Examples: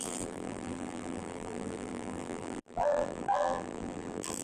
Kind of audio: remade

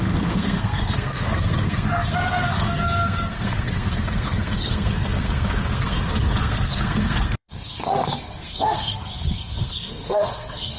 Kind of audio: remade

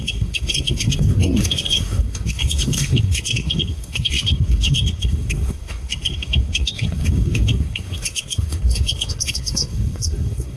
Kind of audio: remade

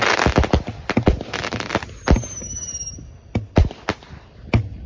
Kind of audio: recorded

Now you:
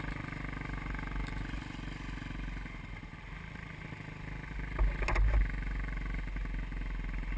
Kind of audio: recorded